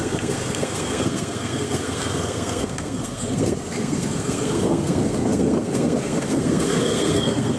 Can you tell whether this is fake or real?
fake